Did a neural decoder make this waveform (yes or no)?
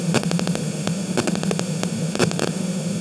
yes